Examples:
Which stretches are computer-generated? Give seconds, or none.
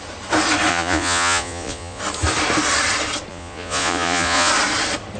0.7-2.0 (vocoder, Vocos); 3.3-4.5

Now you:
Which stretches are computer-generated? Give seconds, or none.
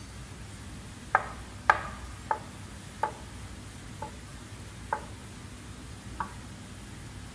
4.3-5.0 (vocoder, BigVGAN v2)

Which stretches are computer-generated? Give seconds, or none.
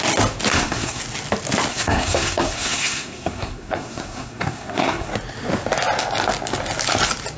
0.5-1.0 (codec, SNAC); 1.7-5.1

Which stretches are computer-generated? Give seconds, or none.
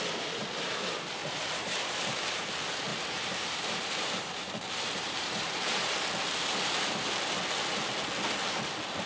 1.2-2.5 (vocoder, BigVGAN v2); 2.9-5.9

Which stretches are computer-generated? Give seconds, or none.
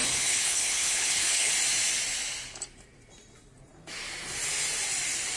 0.0-1.5 (codec, HILCodec)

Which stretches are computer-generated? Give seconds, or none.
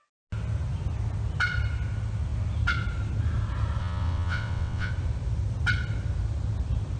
3.8-4.9 (vocoder, WaveNeXt)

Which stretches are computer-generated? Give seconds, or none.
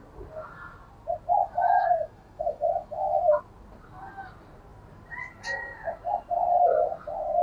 1.4-3.4 (autoencoder, DAC-VAE)